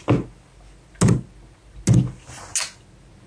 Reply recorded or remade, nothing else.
recorded